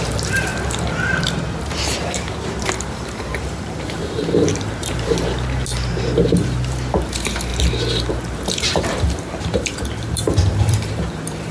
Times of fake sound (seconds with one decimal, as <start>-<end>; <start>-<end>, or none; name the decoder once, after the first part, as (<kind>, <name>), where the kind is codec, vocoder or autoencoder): 0.0-7.5 (vocoder, BigVGAN v2); 8.1-11.5